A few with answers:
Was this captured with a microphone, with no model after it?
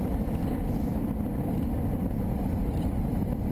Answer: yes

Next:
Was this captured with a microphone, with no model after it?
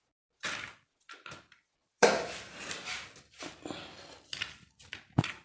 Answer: yes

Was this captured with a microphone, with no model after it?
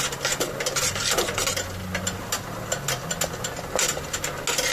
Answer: yes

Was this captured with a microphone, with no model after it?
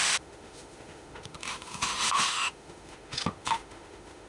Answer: no